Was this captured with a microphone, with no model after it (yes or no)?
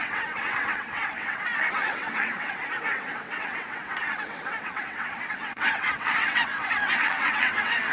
no